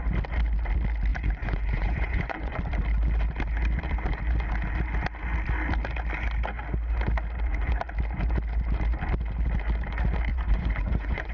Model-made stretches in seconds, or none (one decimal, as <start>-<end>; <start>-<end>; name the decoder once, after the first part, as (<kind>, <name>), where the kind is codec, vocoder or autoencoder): 1.1-2.6 (vocoder, Vocos); 10.3-11.3